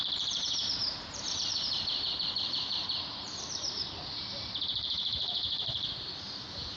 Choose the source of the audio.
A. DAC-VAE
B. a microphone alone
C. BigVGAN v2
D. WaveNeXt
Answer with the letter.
C